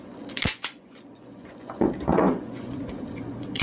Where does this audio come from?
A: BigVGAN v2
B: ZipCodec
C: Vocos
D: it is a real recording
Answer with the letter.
C